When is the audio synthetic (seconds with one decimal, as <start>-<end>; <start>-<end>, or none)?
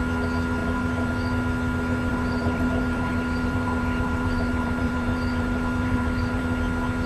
0.6-1.1; 2.1-6.4